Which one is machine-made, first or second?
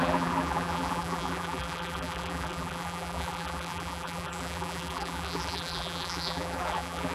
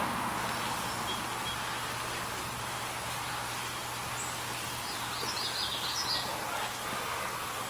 first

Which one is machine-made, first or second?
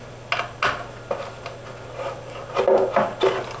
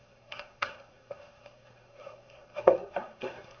second